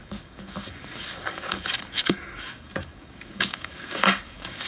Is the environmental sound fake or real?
fake